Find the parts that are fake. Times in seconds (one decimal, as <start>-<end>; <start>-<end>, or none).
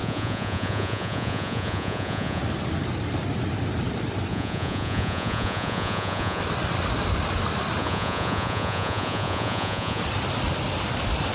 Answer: 0.0-2.4; 4.3-6.4; 7.8-10.0